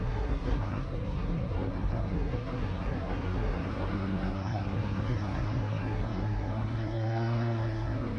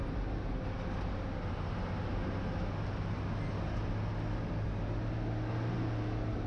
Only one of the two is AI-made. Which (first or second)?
first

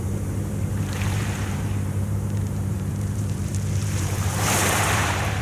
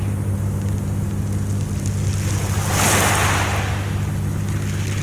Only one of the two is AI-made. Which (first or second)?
first